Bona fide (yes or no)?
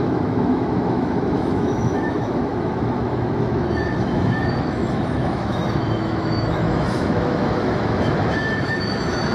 no